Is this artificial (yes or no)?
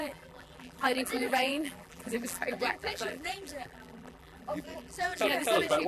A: yes